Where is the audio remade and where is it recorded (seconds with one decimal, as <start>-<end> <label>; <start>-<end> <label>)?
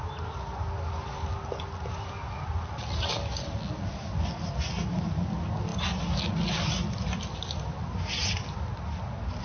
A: 0.0-9.4 recorded